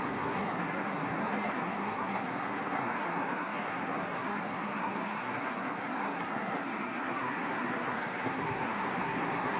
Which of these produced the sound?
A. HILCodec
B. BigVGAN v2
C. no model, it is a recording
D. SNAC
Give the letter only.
D